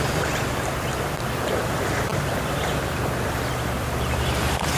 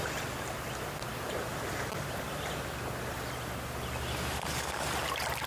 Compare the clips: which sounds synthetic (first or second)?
first